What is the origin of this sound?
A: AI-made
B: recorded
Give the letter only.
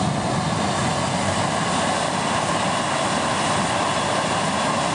B